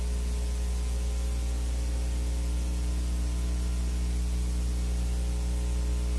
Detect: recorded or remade recorded